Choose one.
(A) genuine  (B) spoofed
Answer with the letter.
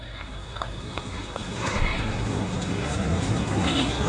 B